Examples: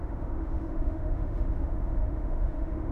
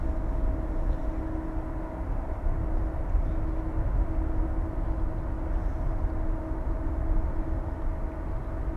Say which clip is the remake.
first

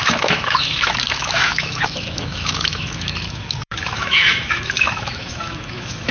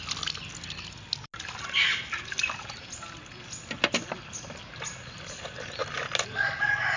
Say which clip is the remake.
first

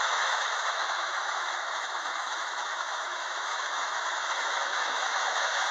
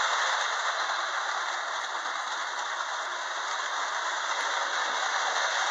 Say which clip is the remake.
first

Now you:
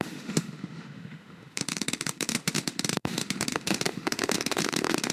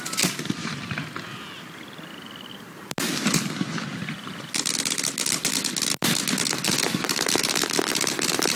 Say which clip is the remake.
first